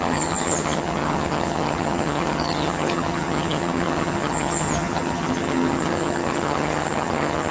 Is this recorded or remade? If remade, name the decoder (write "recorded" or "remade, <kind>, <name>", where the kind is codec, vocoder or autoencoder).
remade, vocoder, HiFi-GAN